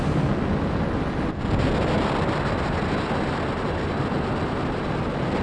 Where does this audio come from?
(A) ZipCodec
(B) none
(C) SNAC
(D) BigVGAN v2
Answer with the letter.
B